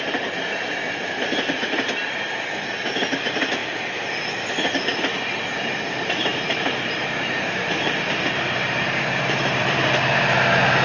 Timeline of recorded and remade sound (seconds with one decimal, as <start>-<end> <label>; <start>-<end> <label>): 0.0-3.6 recorded; 3.6-4.5 remade; 4.5-6.3 recorded; 6.3-10.1 remade; 10.1-10.8 recorded